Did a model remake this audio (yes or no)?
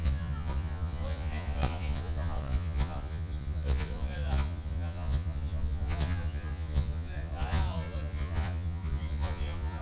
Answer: yes